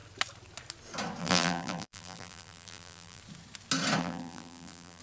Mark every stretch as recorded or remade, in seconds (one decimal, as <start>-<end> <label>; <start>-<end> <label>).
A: 0.0-1.2 recorded; 1.2-3.2 remade; 3.2-4.0 recorded; 4.0-5.0 remade